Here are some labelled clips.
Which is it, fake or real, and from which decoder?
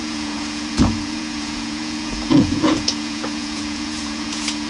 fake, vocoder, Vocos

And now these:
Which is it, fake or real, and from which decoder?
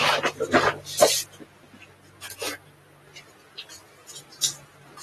real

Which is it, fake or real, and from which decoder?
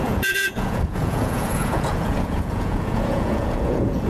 fake, vocoder, Vocos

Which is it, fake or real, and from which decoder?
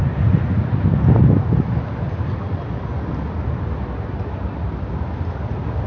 real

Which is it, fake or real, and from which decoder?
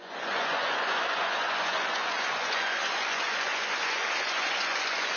fake, vocoder, Vocos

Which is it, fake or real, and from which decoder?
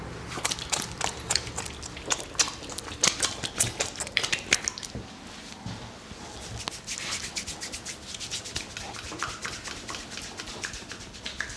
real